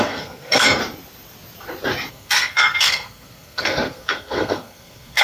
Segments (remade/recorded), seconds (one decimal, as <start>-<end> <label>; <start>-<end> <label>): 0.0-0.8 remade; 0.8-2.1 recorded; 2.1-5.2 remade